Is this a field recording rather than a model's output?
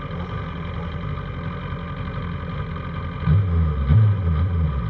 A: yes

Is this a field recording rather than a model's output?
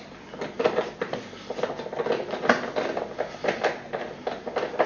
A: yes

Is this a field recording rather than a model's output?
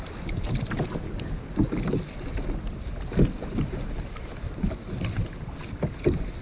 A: yes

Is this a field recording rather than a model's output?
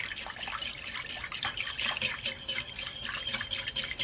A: yes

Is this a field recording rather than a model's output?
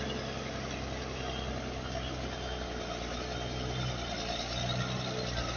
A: yes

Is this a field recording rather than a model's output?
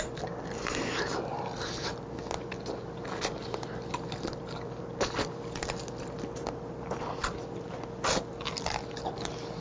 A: yes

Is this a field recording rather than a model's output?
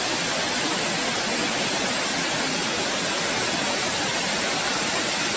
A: yes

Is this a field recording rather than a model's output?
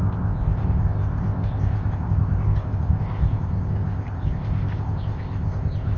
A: no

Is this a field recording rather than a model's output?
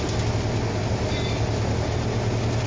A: yes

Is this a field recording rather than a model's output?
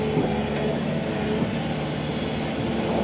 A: yes